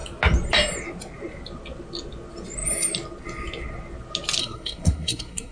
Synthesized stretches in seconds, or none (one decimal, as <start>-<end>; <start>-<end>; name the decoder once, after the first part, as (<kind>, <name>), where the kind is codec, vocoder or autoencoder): 4.4-5.5 (codec, SNAC)